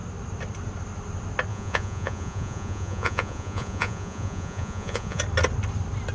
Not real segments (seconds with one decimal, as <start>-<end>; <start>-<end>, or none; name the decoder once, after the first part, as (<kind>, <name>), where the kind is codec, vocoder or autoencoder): 1.5-5.2 (vocoder, Vocos)